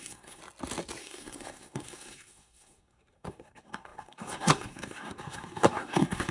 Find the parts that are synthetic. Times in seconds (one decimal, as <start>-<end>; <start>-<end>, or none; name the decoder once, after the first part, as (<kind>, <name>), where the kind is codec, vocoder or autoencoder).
0.0-0.4 (codec, SNAC); 1.0-6.3